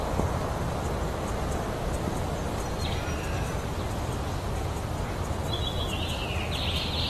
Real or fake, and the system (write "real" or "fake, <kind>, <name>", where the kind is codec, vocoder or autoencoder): real